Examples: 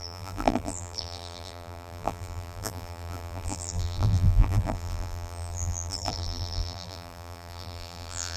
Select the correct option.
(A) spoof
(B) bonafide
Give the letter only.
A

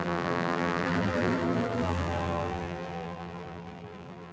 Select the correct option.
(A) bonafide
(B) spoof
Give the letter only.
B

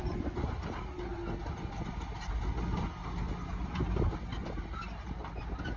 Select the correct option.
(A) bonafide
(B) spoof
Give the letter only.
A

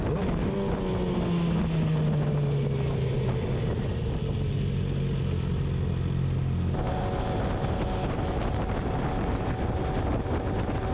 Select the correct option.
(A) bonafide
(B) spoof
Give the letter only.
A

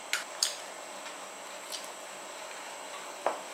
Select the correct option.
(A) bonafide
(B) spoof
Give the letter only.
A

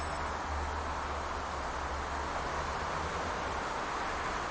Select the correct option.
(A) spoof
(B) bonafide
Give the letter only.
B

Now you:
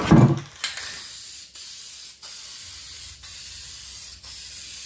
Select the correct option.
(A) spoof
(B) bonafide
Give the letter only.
B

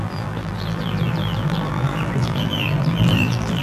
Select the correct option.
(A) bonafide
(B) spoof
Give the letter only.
B